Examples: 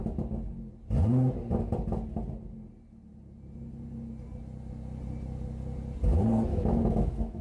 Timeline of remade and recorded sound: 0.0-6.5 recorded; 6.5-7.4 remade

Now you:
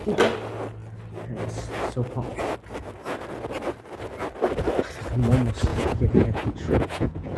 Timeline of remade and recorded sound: 0.0-5.7 recorded; 5.7-7.4 remade

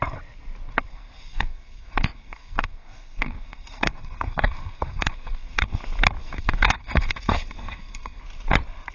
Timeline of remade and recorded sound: 0.0-0.9 recorded; 0.9-5.8 remade; 5.8-6.2 recorded; 6.2-8.2 remade; 8.2-8.9 recorded

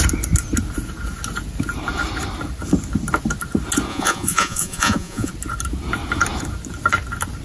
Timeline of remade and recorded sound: 0.0-3.9 recorded; 3.9-5.3 remade; 5.3-7.4 recorded